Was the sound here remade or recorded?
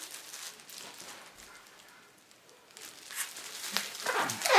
recorded